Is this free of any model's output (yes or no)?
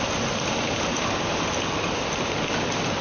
yes